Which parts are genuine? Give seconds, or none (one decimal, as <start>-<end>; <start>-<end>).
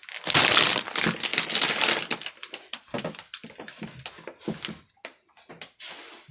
0.0-6.3